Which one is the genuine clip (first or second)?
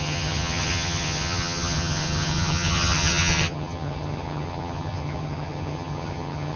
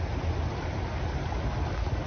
second